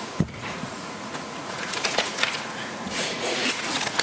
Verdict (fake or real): fake